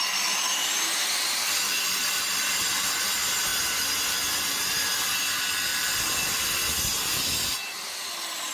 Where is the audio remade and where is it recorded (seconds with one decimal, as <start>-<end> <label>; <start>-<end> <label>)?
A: 0.0-0.6 recorded; 0.6-3.0 remade; 3.0-5.7 recorded; 5.7-8.5 remade